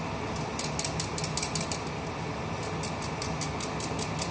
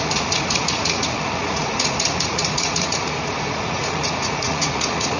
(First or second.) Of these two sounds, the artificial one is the second